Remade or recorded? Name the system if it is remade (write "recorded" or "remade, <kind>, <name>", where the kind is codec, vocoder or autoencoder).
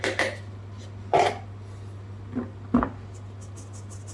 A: recorded